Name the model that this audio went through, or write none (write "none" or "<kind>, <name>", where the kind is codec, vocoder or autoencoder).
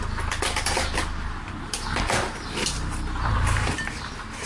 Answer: none